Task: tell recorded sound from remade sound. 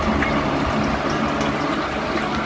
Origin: recorded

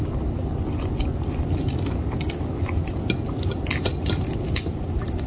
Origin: recorded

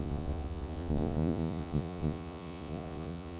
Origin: remade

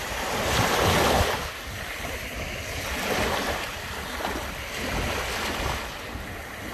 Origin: recorded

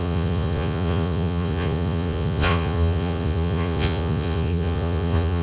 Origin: remade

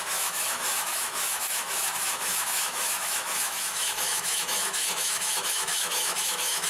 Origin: remade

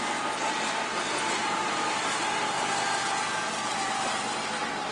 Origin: recorded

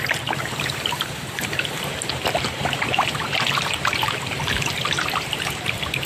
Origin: remade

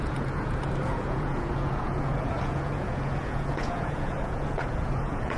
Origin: remade